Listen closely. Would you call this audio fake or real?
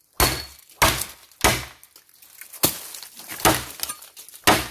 real